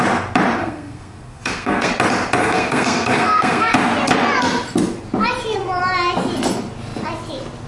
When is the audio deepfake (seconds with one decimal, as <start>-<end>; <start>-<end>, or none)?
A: 0.6-1.9; 2.4-3.7